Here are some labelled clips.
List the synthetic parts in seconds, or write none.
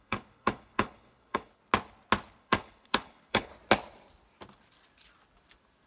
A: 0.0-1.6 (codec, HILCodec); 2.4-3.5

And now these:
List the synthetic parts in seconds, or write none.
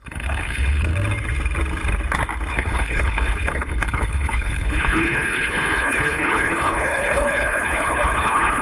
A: 0.0-0.9 (codec, HILCodec); 2.5-8.6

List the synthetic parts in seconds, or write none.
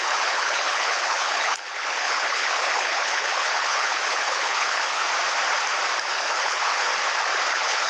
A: 0.0-5.0 (codec, HILCodec); 6.1-6.9; 7.5-7.9